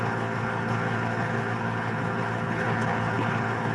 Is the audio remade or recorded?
remade